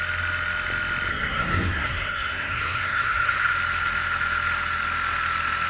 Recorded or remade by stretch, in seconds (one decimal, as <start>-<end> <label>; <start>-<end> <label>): 0.0-1.1 recorded; 1.1-3.5 remade; 3.5-5.7 recorded